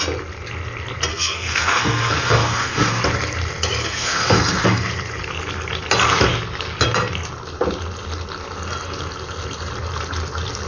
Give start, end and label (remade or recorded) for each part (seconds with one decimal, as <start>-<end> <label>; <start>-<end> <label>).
0.0-1.1 recorded; 1.1-3.0 remade; 3.0-3.8 recorded; 3.8-4.9 remade; 4.9-10.7 recorded